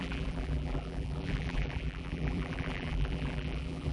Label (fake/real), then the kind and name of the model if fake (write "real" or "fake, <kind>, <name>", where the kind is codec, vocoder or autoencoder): fake, vocoder, BigVGAN v2